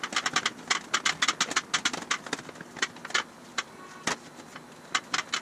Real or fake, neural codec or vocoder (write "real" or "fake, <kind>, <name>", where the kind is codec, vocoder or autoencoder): real